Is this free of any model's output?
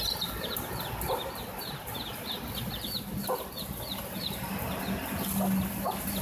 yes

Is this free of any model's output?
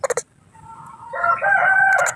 yes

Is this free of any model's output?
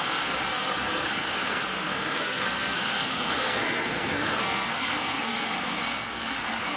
no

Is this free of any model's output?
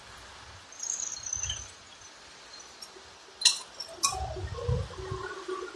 yes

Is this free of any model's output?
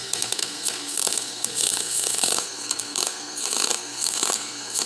no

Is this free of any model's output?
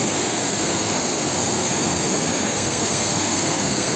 no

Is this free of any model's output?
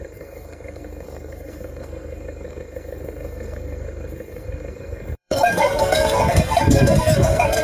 no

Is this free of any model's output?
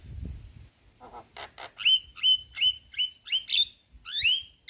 yes